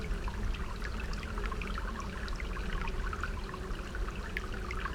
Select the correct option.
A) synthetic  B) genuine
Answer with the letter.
B